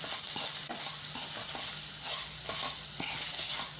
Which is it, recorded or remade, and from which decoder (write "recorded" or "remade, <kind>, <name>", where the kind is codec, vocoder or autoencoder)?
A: recorded